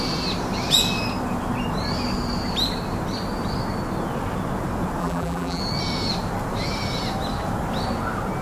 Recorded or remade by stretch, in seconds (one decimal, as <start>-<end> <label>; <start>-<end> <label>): 0.0-5.0 recorded; 5.0-5.6 remade; 5.6-8.4 recorded